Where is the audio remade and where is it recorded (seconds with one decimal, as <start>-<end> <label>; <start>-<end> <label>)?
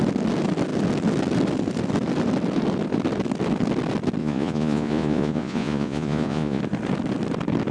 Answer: 0.0-4.2 recorded; 4.2-6.6 remade; 6.6-7.7 recorded